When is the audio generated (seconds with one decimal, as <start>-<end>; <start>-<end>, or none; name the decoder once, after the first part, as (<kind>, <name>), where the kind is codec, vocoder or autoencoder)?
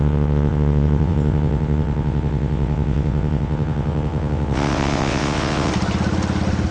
0.0-5.7 (vocoder, WaveNeXt)